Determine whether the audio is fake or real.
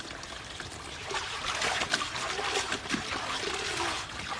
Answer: real